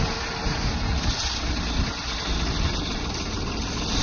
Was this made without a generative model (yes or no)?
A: yes